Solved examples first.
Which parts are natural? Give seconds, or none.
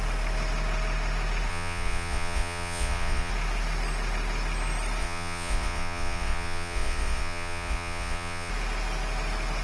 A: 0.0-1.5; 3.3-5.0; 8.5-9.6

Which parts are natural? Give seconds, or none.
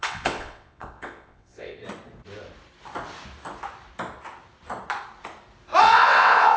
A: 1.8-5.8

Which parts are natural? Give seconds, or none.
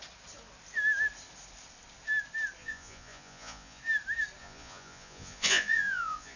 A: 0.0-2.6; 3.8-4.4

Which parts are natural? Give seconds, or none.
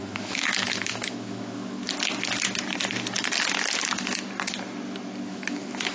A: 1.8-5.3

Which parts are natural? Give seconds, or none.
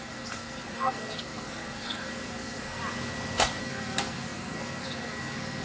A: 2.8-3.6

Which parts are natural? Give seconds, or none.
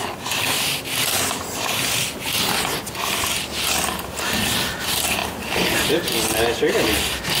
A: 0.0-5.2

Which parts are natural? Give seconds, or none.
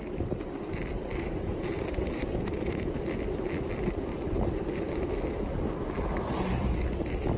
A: 0.0-1.1; 3.0-4.1; 4.9-7.4